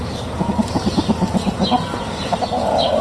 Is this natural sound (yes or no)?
yes